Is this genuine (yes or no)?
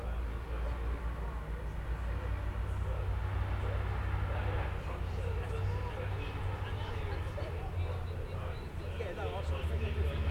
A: yes